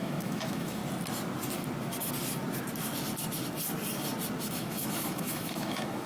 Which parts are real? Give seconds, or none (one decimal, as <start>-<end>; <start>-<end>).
0.8-4.5

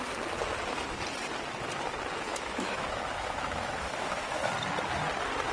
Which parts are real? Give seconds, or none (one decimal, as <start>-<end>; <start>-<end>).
0.0-2.3; 4.4-5.5